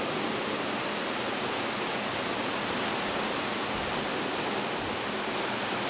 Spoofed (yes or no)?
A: no